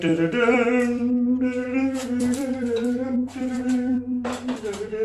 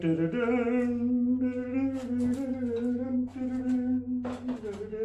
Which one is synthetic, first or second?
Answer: first